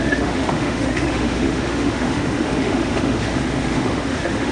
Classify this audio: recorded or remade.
remade